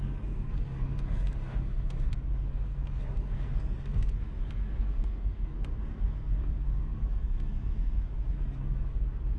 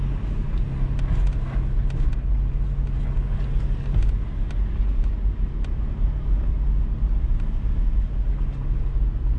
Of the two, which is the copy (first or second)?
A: first